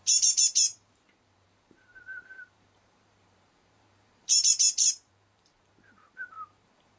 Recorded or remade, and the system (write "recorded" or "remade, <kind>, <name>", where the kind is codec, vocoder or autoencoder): remade, vocoder, BigVGAN v2